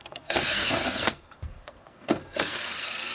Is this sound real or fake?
fake